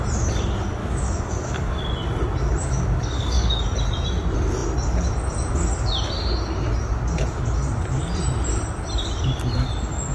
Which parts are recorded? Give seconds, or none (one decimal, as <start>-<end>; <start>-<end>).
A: 0.0-0.8; 1.9-2.6; 3.6-10.1